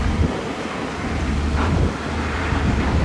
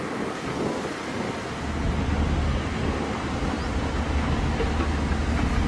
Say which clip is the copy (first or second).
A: first